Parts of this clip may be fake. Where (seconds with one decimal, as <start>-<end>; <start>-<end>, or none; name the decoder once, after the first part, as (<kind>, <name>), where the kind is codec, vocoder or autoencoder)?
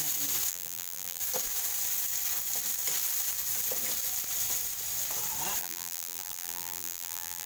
0.5-1.2 (vocoder, BigVGAN v2); 5.6-7.5